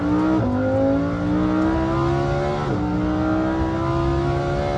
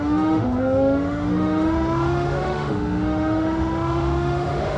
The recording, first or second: first